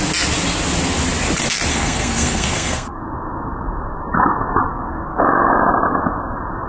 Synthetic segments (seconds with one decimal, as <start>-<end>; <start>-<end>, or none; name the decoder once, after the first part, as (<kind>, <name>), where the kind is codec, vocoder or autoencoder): 1.7-3.0 (codec, SNAC); 4.7-5.2